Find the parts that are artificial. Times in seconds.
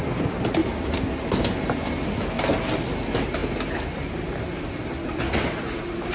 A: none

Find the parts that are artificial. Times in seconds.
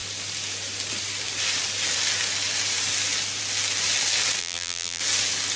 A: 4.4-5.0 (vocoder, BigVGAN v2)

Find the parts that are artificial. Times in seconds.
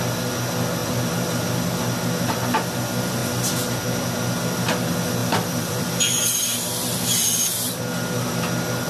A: 0.8-1.5 (vocoder, BigVGAN v2); 5.2-7.8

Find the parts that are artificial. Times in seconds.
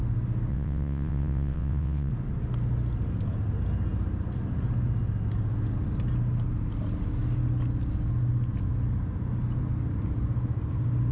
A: 0.5-2.1 (vocoder, WaveNeXt)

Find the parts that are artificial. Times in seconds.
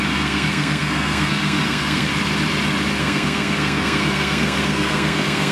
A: 0.0-2.1 (codec, SNAC); 3.0-5.5